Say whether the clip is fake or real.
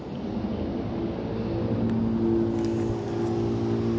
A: real